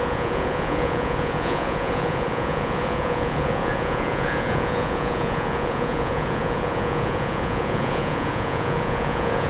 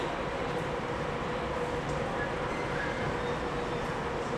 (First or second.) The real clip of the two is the second